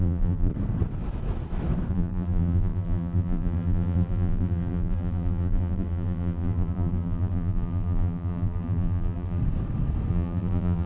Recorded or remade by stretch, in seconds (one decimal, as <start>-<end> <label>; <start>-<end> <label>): 0.0-0.5 remade; 0.5-1.9 recorded; 1.9-9.4 remade; 9.4-10.1 recorded; 10.1-10.9 remade